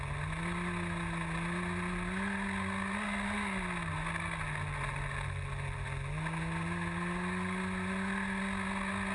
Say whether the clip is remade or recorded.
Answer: recorded